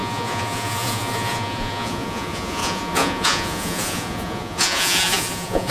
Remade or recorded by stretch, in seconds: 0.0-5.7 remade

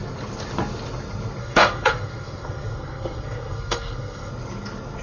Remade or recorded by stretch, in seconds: 0.0-1.4 recorded; 1.4-4.3 remade; 4.3-5.0 recorded

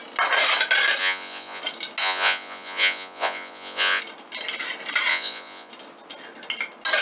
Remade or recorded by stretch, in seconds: 0.0-1.0 recorded; 1.0-1.6 remade; 1.6-2.0 recorded; 2.0-4.0 remade; 4.0-5.1 recorded; 5.1-5.7 remade; 5.7-7.0 recorded

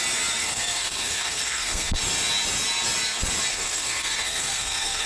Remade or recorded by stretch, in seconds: 0.0-0.4 recorded; 0.4-2.0 remade; 2.0-3.5 recorded; 3.5-5.1 remade

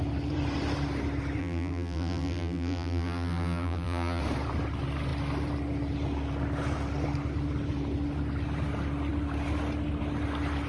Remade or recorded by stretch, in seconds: 0.0-1.4 recorded; 1.4-4.2 remade; 4.2-10.7 recorded

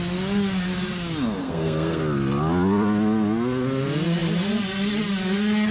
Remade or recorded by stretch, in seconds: 0.0-1.4 recorded; 1.4-2.0 remade; 2.0-5.7 recorded

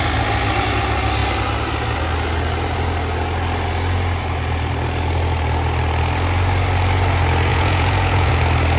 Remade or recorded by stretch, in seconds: 0.0-7.5 recorded; 7.5-8.3 remade; 8.3-8.8 recorded